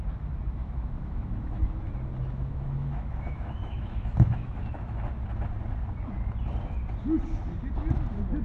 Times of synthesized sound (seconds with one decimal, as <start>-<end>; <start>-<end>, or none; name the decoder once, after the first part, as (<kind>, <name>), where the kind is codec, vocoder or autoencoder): 0.6-1.6 (autoencoder, DAC-VAE); 2.2-4.6